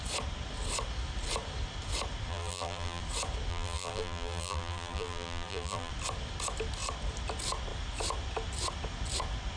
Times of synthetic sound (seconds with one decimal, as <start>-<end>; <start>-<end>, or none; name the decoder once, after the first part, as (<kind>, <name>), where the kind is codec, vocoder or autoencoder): 2.3-3.0 (vocoder, BigVGAN v2); 3.5-5.9